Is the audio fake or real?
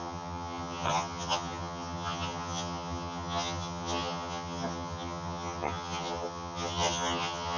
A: fake